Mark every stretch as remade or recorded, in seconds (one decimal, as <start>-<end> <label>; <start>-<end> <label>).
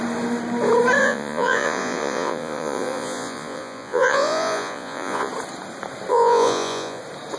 0.0-1.0 recorded; 1.0-5.3 remade; 5.3-6.1 recorded; 6.1-7.0 remade; 7.0-7.4 recorded